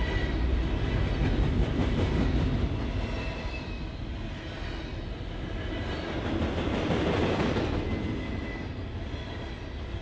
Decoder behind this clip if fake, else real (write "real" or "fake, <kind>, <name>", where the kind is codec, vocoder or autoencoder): real